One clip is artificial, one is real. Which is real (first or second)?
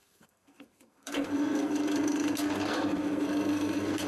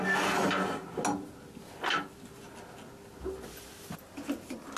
second